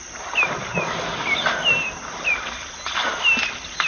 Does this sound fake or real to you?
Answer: real